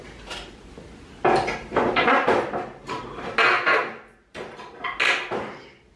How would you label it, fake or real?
real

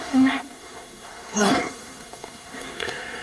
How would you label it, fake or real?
fake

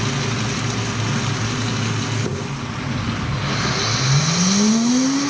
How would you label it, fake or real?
real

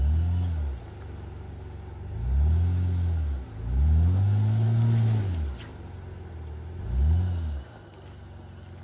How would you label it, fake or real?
real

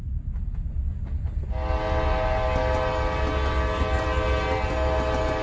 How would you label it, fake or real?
real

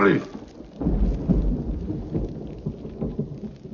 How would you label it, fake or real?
real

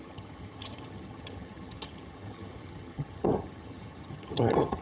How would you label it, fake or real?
fake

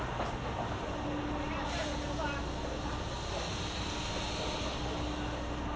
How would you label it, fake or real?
real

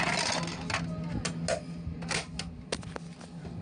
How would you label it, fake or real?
real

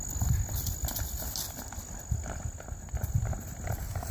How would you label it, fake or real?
real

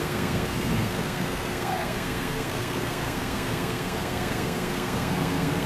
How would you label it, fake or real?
fake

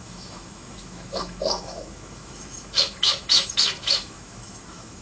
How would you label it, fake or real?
fake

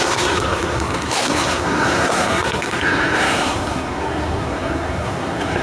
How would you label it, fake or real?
fake